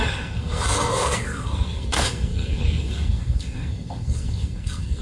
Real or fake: fake